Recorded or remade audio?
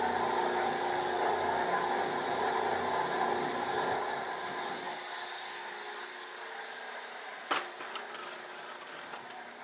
recorded